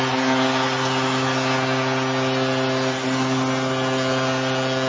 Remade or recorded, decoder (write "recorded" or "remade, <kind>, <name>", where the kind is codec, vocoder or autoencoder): recorded